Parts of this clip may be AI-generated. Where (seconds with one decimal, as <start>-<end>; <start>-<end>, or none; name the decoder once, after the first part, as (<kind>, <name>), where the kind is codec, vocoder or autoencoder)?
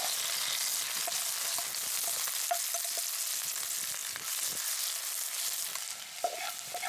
none